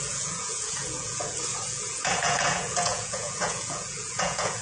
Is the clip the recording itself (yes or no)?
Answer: no